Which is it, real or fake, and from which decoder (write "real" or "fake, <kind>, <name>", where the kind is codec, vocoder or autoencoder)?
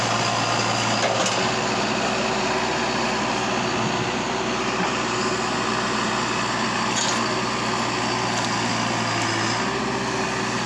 real